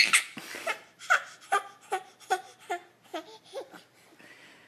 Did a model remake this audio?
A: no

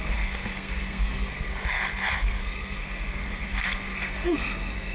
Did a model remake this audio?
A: yes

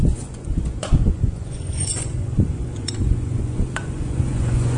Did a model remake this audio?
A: yes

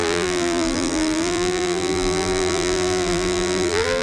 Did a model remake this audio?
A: yes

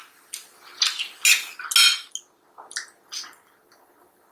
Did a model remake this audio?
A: no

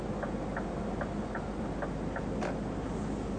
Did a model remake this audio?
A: no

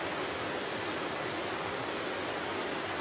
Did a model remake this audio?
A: no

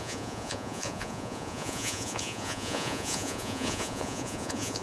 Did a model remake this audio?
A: yes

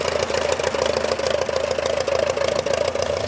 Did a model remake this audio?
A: no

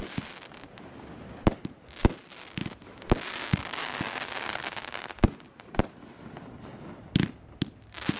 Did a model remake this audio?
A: no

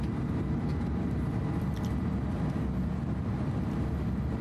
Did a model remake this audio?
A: no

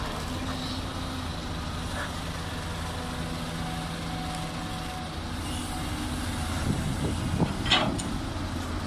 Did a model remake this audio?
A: no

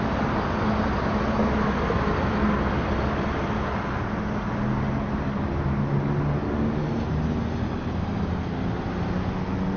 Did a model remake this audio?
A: no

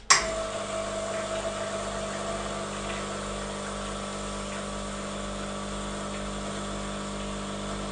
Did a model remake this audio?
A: no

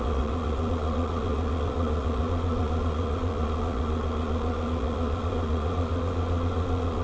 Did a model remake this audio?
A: yes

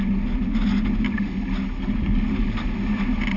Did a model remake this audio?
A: no